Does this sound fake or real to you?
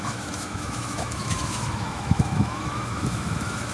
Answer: fake